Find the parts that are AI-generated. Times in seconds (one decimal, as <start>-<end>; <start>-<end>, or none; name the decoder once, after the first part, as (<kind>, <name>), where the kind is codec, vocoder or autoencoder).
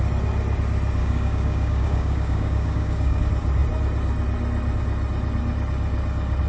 1.0-3.2 (codec, DAC)